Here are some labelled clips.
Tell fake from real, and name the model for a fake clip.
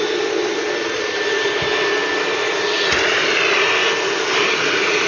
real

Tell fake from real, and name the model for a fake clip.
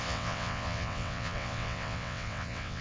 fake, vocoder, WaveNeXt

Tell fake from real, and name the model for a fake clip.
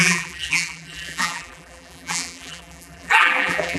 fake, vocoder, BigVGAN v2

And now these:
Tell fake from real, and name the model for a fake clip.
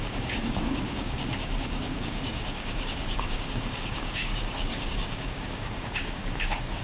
fake, codec, DAC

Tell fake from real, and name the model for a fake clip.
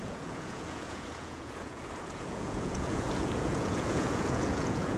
fake, vocoder, Vocos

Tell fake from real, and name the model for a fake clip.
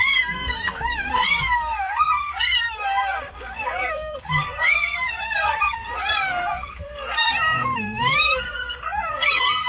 fake, codec, SNAC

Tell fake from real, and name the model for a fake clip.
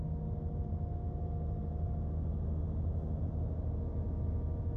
real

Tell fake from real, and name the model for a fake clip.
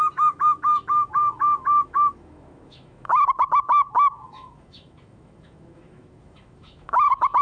fake, autoencoder, DAC-VAE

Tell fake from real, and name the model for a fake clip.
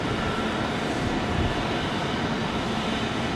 real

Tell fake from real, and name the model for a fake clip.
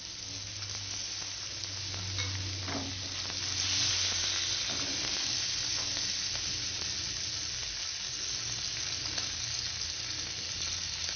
real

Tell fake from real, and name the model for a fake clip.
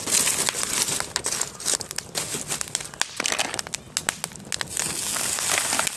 real